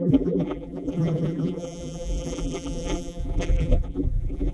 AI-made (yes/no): yes